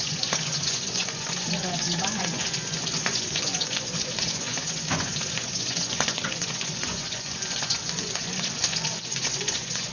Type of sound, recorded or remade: remade